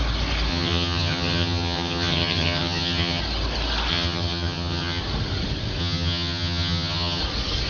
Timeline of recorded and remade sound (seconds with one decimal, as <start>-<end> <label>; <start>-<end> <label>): 0.0-0.5 recorded; 0.5-3.2 remade; 3.2-3.9 recorded; 3.9-5.0 remade; 5.0-5.8 recorded; 5.8-7.2 remade; 7.2-7.7 recorded